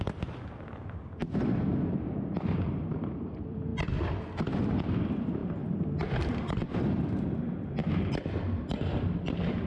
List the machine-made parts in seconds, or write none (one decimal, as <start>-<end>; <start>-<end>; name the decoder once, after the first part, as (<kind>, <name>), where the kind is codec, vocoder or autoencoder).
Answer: 0.0-3.7 (vocoder, BigVGAN v2); 4.2-5.4; 6.2-7.8; 9.2-9.7